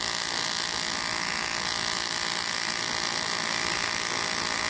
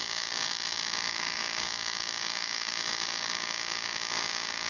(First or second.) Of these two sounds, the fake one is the second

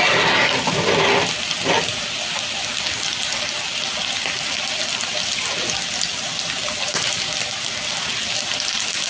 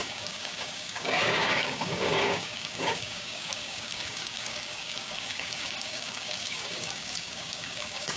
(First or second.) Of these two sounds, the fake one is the second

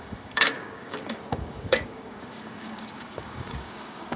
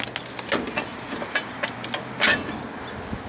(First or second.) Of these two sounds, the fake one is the first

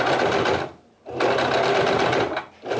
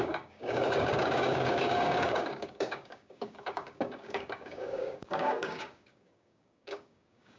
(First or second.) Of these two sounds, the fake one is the second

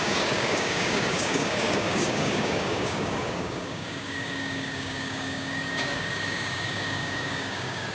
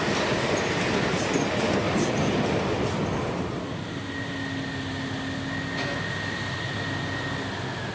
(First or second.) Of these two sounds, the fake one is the first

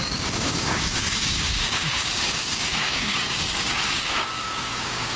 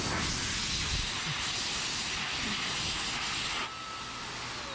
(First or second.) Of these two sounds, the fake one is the first